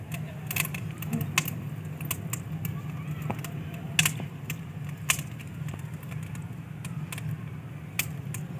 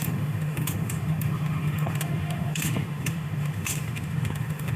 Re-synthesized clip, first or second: second